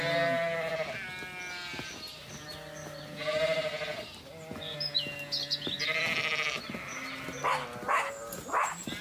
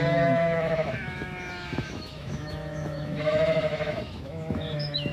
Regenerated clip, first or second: second